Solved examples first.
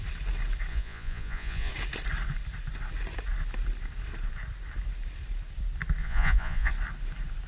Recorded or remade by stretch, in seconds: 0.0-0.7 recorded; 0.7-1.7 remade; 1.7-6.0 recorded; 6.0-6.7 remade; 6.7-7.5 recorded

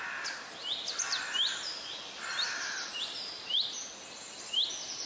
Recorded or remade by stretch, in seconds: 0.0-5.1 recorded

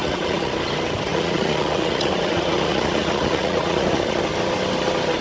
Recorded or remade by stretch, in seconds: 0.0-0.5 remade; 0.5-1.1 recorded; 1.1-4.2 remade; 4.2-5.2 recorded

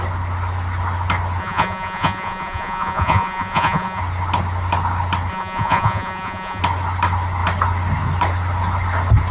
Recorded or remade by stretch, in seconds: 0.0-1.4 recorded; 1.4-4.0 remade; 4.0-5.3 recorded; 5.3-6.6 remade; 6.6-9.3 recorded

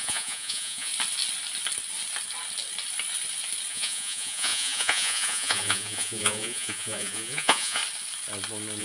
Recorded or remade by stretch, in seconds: 0.0-0.9 remade; 0.9-3.7 recorded; 3.7-7.8 remade; 7.8-8.8 recorded

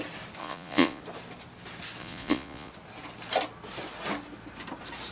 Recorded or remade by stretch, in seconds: 0.0-0.4 recorded; 0.4-1.0 remade; 1.0-2.0 recorded; 2.0-2.7 remade; 2.7-5.1 recorded

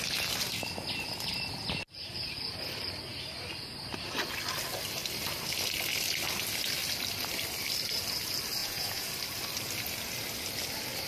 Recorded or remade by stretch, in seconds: 0.0-8.6 recorded; 8.6-9.1 remade; 9.1-11.1 recorded